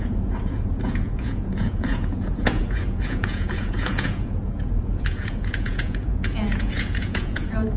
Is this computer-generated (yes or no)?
yes